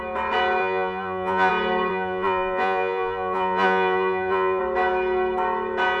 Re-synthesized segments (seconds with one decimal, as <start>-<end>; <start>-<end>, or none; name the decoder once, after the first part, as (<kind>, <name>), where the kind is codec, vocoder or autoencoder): 0.6-1.5 (vocoder, Vocos); 1.9-4.6